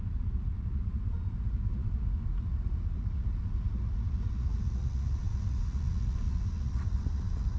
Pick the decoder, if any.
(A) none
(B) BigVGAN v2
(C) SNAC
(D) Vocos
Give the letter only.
D